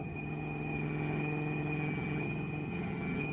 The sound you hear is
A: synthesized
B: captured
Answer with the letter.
A